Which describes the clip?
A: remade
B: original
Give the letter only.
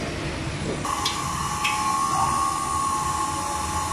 B